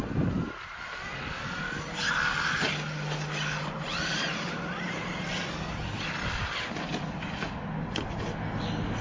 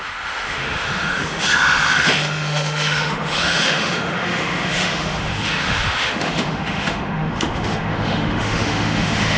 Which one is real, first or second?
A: first